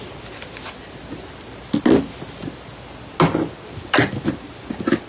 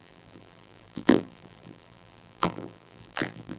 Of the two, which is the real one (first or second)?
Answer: first